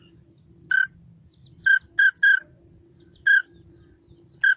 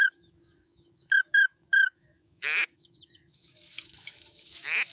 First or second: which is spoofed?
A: second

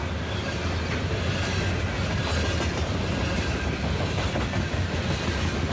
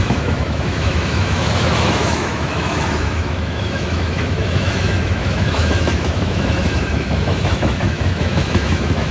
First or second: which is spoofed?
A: second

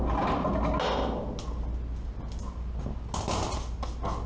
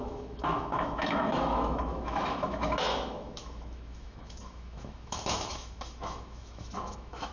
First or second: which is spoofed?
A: second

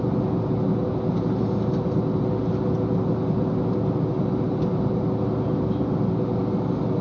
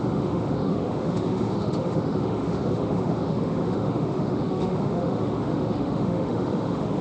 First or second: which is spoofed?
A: second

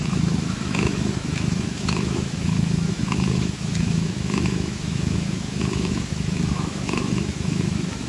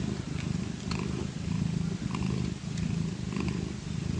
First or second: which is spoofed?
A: first